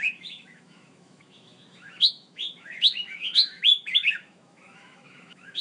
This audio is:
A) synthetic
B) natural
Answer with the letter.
A